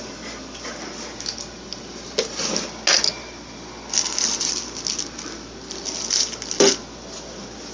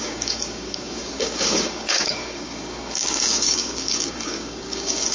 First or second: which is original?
first